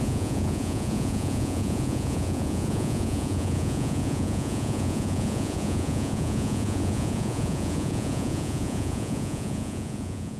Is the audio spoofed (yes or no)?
yes